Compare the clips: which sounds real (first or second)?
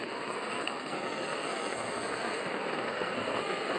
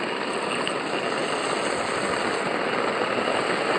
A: second